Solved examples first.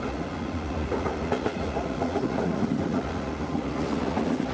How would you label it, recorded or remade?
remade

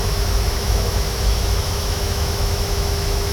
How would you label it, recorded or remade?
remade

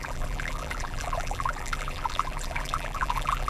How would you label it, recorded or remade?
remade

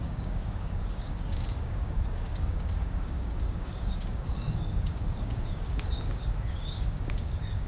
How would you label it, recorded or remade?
remade